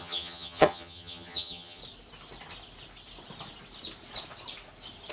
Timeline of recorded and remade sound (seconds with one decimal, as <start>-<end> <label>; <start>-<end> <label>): 0.0-1.8 remade; 1.8-5.1 recorded